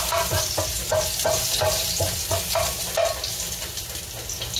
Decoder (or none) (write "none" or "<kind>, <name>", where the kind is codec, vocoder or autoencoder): none